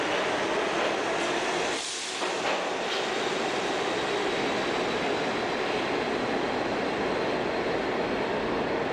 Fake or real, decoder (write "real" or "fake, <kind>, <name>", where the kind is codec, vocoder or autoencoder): real